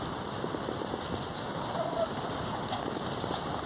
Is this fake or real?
fake